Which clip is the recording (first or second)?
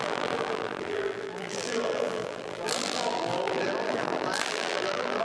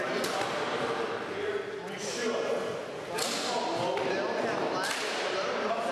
second